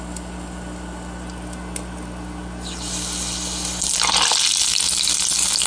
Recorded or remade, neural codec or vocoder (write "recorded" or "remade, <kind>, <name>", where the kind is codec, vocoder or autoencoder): recorded